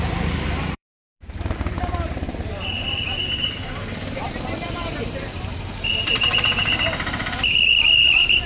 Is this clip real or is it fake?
fake